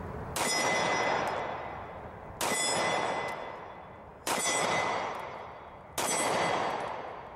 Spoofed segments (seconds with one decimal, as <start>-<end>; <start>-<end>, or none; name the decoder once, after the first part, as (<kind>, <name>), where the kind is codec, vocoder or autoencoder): 4.1-5.1 (vocoder, BigVGAN v2)